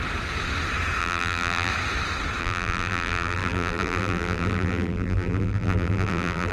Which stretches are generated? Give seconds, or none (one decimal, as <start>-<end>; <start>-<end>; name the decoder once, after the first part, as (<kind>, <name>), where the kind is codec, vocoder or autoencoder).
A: 1.0-1.7 (vocoder, BigVGAN v2); 2.4-6.5